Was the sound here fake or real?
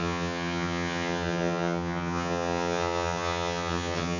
fake